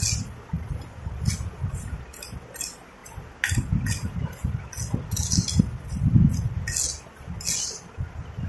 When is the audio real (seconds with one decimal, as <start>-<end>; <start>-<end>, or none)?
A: 0.0-8.5